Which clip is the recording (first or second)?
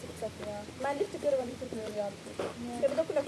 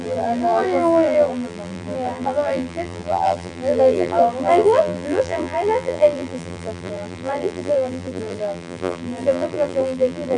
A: first